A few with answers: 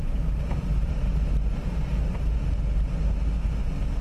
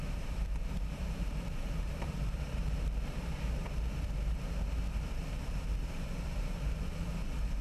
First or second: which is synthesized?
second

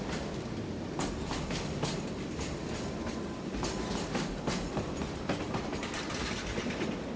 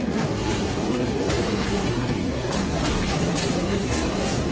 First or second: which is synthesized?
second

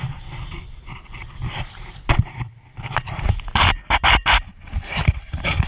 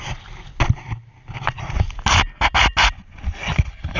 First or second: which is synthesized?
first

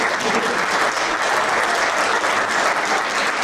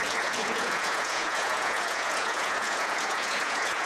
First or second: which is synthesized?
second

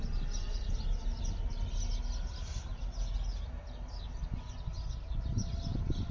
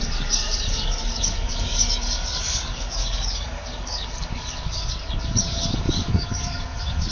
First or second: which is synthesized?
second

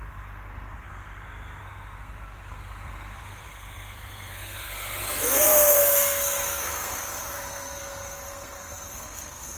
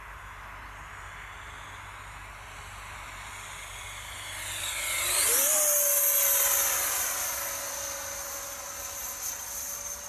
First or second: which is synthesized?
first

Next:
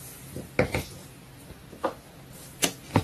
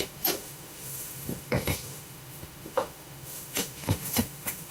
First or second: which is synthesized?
second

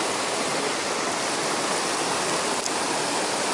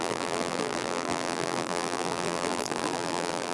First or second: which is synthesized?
second